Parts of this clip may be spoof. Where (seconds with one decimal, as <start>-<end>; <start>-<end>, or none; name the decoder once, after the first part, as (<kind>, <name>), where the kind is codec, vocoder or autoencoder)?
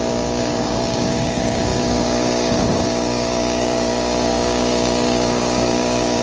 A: 0.0-6.2 (codec, DAC)